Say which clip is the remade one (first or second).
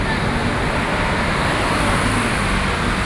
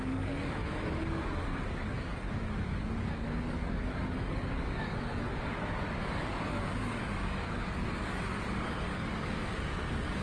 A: second